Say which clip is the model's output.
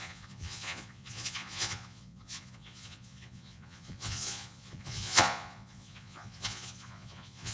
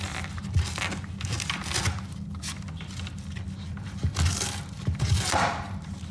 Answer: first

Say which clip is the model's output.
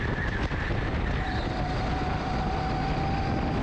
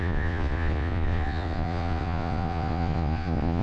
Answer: second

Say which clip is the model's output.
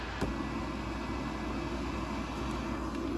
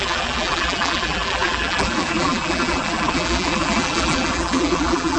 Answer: second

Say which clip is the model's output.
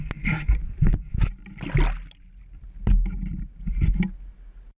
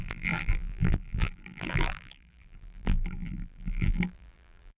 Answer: second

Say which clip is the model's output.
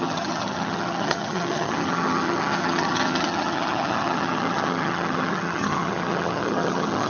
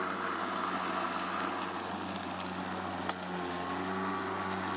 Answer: first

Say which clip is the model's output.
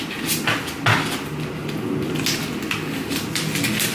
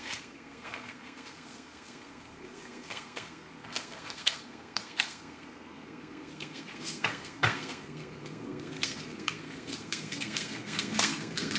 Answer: second